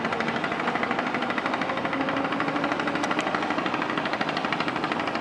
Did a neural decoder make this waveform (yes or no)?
no